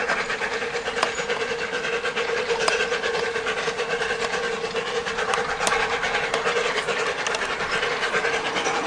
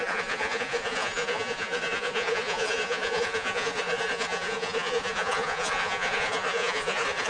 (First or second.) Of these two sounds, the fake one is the second